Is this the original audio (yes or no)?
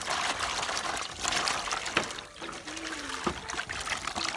yes